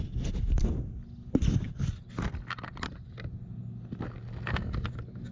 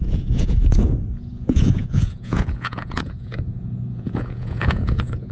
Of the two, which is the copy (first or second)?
second